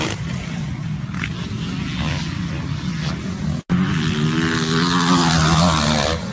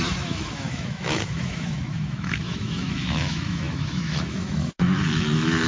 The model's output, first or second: second